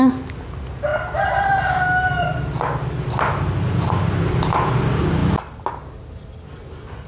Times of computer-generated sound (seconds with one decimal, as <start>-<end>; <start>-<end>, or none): none